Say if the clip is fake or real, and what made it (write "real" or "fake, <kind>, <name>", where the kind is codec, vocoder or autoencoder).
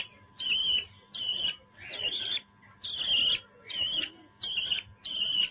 real